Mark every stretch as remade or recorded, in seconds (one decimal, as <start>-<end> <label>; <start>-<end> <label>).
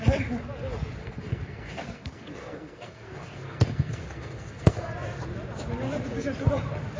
0.0-1.0 recorded; 1.0-4.9 remade; 4.9-7.0 recorded